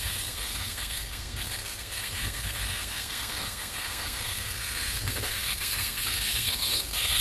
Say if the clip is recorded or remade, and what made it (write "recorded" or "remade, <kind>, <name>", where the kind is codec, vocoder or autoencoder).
remade, codec, SNAC